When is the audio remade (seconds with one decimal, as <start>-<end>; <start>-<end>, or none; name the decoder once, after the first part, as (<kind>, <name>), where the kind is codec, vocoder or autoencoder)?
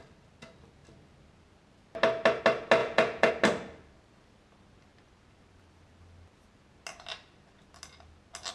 2.8-3.3 (vocoder, Vocos)